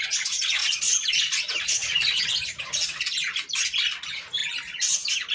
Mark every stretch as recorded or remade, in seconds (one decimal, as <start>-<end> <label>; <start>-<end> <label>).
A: 0.0-2.0 remade; 2.0-4.0 recorded; 4.0-4.4 remade; 4.4-5.3 recorded